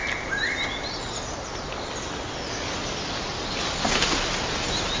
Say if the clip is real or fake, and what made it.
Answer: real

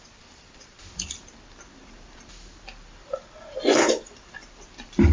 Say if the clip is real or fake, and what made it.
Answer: fake, vocoder, BigVGAN v2